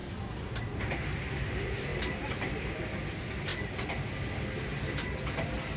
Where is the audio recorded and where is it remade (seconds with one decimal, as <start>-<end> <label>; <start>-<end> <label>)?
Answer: 0.0-1.9 recorded; 1.9-2.5 remade; 2.5-5.8 recorded